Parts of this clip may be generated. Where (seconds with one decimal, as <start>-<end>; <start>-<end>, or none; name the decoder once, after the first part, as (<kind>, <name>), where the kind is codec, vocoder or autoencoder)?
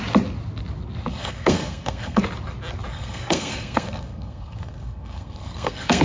1.1-2.2 (codec, SNAC); 2.9-6.0